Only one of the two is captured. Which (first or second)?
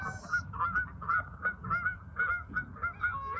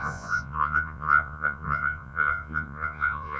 first